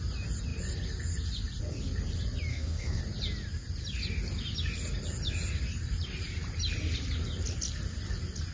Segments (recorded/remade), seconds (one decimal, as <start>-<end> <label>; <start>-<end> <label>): 0.0-2.5 recorded; 2.5-3.0 remade; 3.0-8.5 recorded